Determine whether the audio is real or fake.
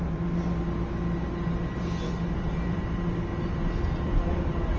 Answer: real